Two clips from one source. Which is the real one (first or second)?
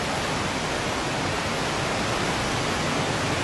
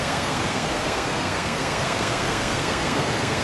first